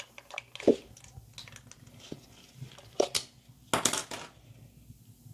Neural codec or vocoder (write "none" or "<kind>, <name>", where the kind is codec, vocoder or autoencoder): none